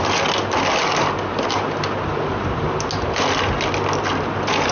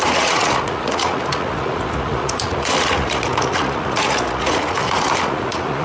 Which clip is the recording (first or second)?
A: first